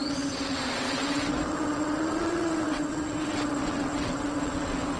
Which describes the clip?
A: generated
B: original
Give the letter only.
A